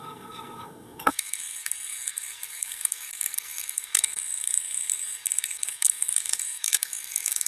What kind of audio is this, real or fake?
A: fake